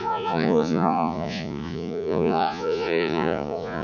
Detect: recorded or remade remade